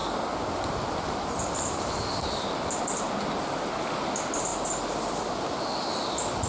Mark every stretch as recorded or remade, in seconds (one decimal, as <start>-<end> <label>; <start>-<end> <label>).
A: 0.0-3.0 remade; 3.0-6.5 recorded